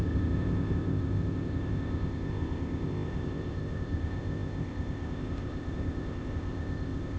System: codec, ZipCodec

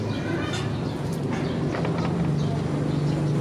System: none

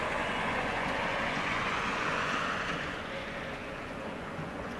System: vocoder, Vocos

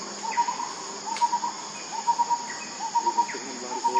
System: none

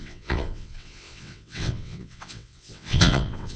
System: vocoder, WaveNeXt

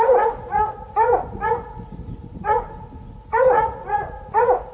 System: vocoder, Vocos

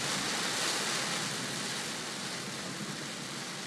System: none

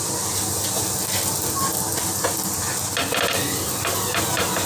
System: none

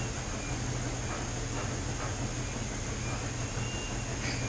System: none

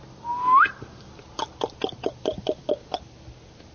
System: none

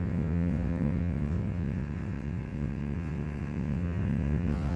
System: vocoder, WaveNeXt